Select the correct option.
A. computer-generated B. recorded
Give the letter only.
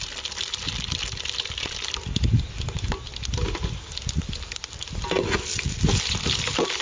B